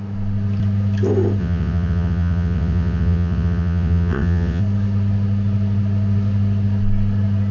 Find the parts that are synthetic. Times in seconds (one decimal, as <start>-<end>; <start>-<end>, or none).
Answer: 1.4-4.6

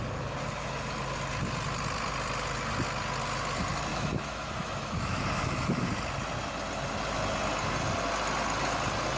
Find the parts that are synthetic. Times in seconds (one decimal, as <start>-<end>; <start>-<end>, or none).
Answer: 3.9-5.9

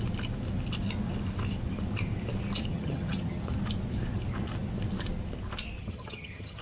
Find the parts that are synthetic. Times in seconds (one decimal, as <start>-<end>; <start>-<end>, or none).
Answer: 2.7-3.4; 5.8-6.6

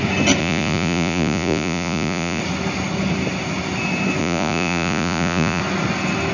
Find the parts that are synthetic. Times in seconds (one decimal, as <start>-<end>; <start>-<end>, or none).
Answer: 0.4-2.4; 4.2-5.6

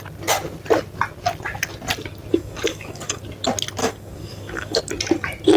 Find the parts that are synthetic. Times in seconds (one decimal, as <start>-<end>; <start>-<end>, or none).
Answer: 2.3-3.2; 3.8-4.8

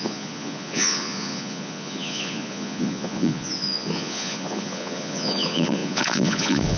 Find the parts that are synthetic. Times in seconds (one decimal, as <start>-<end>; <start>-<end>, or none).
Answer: 0.0-6.8

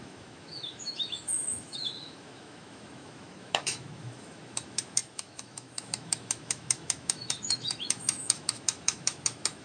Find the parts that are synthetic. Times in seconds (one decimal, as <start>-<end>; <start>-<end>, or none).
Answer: 0.0-9.6

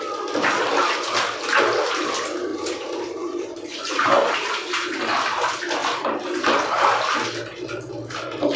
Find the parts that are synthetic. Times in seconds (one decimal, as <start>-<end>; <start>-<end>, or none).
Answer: 2.5-5.0